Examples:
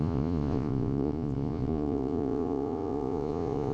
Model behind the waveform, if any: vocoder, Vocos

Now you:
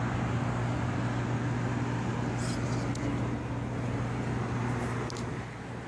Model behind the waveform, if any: none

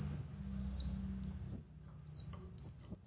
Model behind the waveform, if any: none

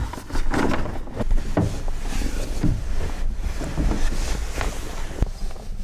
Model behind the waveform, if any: none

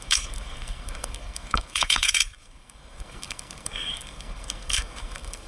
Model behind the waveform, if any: codec, SNAC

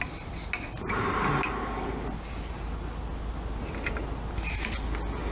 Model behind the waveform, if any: none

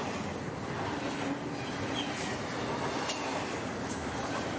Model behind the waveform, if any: none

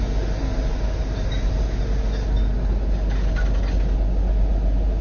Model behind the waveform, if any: none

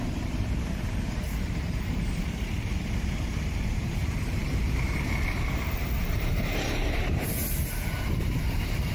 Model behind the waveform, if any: vocoder, BigVGAN v2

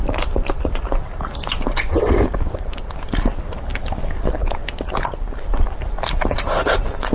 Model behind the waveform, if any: none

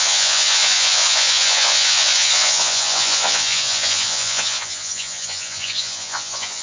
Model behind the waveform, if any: vocoder, Vocos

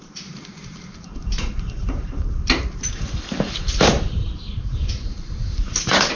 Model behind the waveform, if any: vocoder, BigVGAN v2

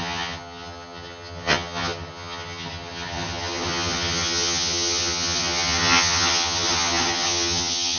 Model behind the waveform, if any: vocoder, HiFi-GAN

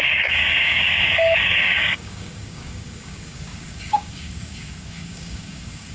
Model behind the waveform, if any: codec, DAC